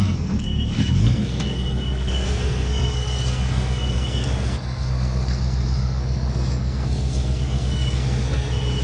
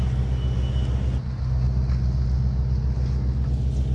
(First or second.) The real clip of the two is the second